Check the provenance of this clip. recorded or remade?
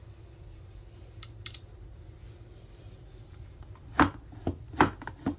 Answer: recorded